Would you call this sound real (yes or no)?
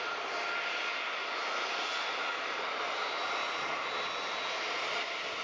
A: yes